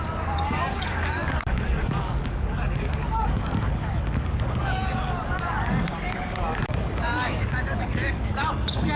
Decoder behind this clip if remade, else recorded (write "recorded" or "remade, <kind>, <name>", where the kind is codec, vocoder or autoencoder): remade, codec, DAC